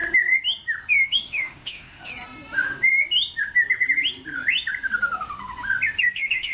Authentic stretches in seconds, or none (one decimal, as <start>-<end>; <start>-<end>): 0.0-0.9; 2.1-6.0